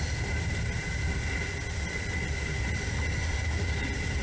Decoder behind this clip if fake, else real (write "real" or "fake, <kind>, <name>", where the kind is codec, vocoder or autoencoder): real